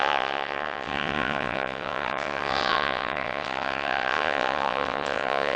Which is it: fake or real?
fake